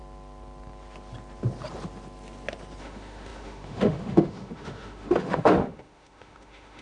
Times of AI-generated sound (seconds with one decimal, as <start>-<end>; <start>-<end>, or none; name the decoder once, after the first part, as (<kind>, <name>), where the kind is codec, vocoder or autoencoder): 2.8-6.8 (autoencoder, DAC-VAE)